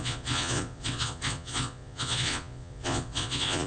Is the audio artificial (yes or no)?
yes